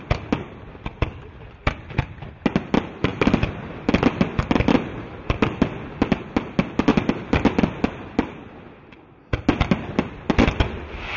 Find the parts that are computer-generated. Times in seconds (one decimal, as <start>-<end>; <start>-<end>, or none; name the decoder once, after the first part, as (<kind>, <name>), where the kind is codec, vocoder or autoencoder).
none